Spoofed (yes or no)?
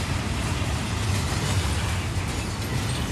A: no